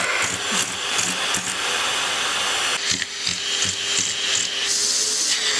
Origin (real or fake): real